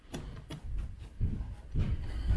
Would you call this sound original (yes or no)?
yes